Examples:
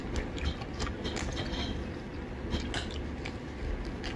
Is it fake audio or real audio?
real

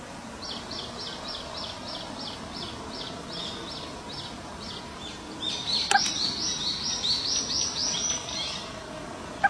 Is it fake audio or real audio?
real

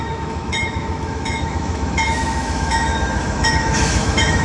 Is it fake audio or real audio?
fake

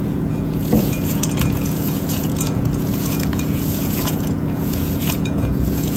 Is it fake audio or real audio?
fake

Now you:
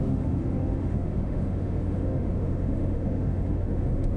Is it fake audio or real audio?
fake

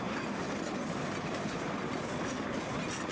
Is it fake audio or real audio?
real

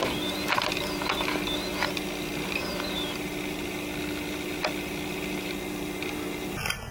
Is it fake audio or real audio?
real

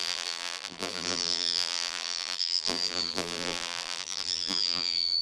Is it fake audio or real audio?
fake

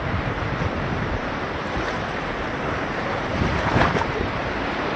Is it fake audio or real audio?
fake